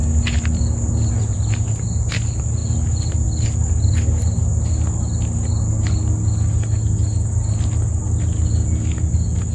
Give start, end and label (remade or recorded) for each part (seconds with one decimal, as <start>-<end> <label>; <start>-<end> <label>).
0.0-9.5 recorded